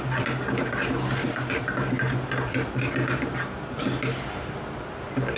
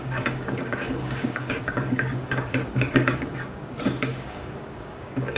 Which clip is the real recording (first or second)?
first